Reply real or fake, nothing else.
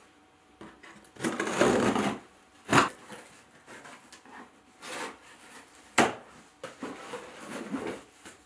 real